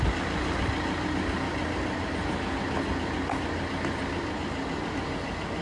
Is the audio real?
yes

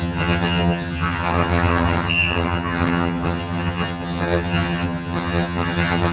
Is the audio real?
no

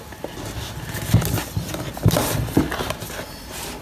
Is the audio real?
yes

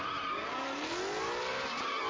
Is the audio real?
yes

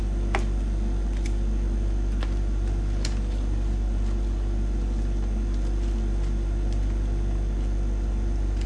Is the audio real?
yes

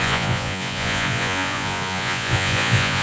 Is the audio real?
no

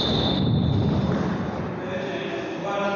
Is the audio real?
yes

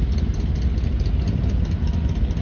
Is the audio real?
yes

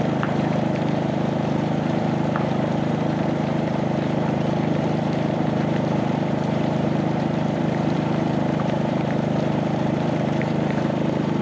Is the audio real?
no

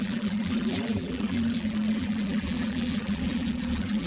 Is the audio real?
no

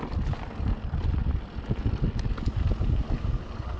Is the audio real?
yes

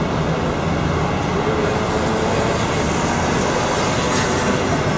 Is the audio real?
yes